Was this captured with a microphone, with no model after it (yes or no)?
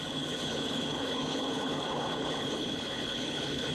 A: no